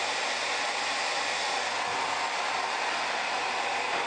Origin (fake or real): real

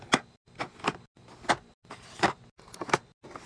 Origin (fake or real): real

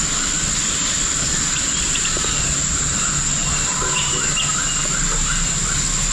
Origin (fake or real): real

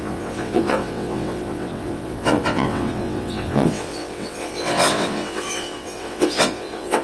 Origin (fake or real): fake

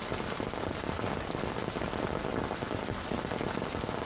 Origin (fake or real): real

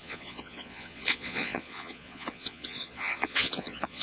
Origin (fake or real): fake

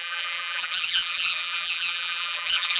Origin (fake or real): fake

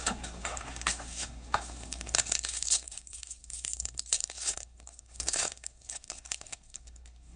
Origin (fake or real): fake